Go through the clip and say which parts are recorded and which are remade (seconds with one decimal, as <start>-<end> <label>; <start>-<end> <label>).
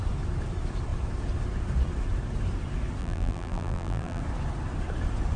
0.0-3.0 recorded; 3.0-4.2 remade; 4.2-5.4 recorded